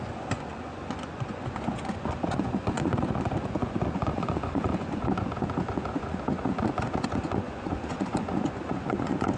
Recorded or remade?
remade